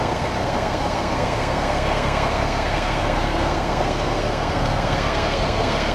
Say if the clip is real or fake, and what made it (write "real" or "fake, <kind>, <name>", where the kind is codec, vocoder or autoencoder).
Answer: fake, codec, SNAC